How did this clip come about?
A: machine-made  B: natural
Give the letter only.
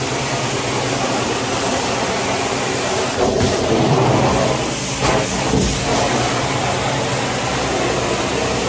B